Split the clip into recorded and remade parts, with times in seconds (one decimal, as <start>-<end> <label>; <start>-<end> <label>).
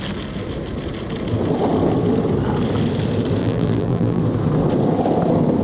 0.0-3.4 recorded; 3.4-4.2 remade; 4.2-5.6 recorded